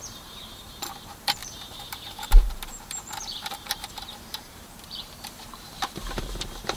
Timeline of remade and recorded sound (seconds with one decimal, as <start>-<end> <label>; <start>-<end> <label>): 0.0-6.8 remade